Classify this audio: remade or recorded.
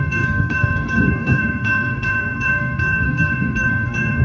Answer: remade